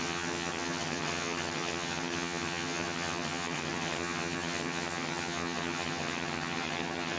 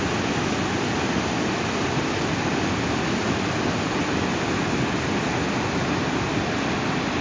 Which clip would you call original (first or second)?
second